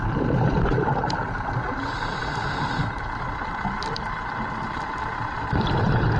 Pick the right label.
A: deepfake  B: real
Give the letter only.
B